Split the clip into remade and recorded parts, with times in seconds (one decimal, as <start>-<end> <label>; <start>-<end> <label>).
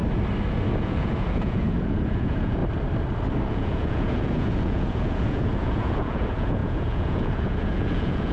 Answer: 0.0-0.8 recorded; 0.8-2.6 remade; 2.6-3.5 recorded; 3.5-8.3 remade